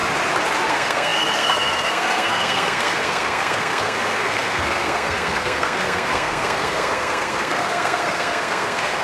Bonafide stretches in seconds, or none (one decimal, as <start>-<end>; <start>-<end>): 0.0-0.7